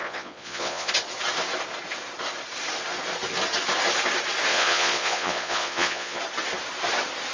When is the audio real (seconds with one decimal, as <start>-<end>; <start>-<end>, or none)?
0.9-4.5; 6.2-7.3